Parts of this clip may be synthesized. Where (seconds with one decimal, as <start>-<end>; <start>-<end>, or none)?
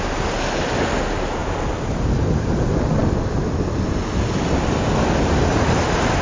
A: none